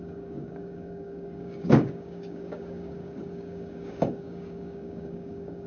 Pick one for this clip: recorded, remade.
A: remade